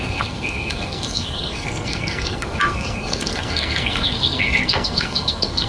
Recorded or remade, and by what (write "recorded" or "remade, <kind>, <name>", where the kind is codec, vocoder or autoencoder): remade, codec, SNAC